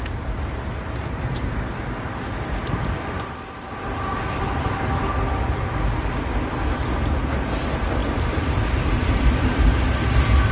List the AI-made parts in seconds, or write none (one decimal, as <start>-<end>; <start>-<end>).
1.0-1.7; 2.6-5.0; 8.0-9.7